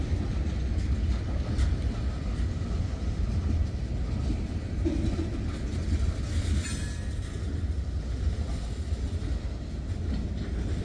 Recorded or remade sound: recorded